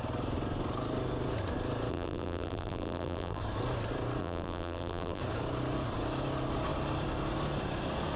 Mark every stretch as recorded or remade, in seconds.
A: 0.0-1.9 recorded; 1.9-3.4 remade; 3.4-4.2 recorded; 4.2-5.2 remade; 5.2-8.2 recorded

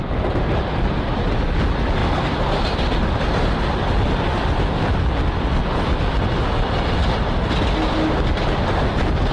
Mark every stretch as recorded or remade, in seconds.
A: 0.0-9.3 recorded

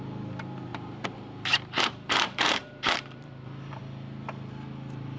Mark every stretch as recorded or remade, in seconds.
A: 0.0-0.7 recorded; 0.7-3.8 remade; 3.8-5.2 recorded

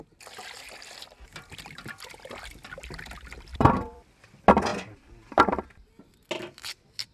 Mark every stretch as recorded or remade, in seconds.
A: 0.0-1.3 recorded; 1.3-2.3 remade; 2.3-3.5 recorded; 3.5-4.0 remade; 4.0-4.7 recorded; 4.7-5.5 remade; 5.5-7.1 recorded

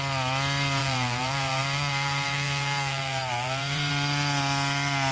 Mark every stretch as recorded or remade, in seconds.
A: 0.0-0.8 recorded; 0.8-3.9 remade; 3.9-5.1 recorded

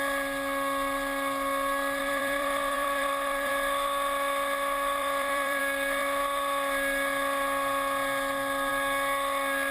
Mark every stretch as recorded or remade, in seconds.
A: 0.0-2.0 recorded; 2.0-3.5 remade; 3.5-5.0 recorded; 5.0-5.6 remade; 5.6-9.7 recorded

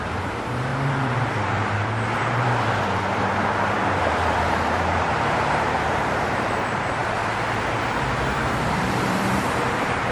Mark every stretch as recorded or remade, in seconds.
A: 0.0-0.7 remade; 0.7-4.0 recorded; 4.0-10.1 remade

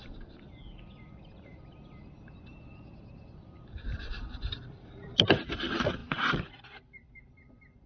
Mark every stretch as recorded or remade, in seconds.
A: 0.0-7.9 remade